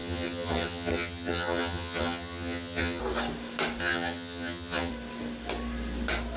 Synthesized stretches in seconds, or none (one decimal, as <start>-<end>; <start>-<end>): 0.0-3.0; 3.8-4.9